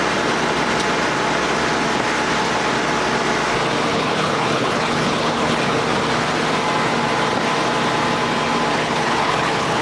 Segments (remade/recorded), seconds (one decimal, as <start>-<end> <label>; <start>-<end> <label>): 0.0-3.9 recorded; 3.9-5.8 remade; 5.8-8.7 recorded; 8.7-9.8 remade